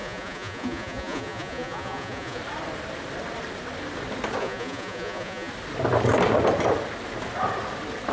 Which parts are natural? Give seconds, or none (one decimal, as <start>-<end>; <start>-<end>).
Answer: 2.4-4.4; 5.5-8.1